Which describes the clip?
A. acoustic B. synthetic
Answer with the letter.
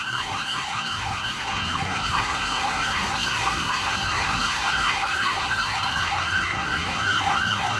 B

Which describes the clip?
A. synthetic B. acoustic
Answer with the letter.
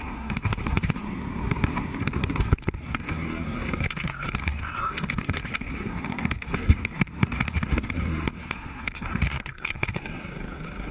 A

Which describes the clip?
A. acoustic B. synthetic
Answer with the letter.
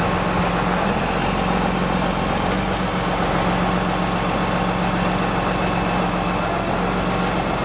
A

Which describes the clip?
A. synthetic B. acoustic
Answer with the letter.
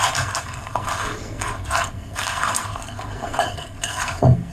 A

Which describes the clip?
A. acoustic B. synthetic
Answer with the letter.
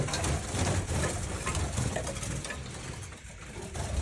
A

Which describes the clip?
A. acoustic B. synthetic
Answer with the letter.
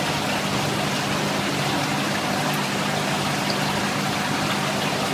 A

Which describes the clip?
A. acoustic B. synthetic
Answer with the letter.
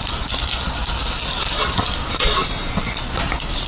A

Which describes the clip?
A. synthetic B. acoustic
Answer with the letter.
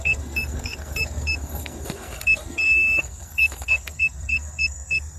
A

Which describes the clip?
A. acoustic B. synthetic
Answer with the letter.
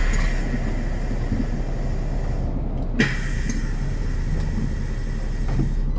A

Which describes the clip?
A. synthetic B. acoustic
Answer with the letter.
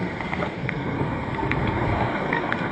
A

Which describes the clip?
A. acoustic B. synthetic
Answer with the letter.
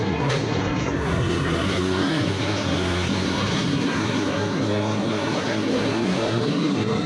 B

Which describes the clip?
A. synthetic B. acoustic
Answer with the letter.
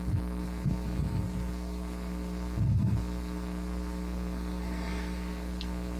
A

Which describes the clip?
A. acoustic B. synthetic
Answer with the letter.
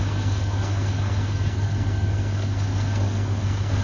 B